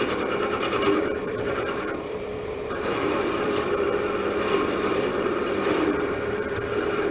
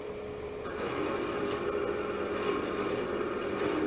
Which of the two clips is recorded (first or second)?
second